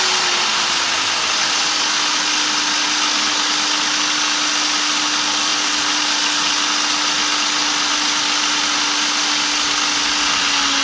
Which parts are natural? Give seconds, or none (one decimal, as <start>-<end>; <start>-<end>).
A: 0.0-10.8